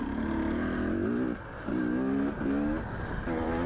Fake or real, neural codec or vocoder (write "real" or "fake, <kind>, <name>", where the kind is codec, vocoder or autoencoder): real